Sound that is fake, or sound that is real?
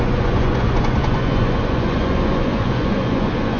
fake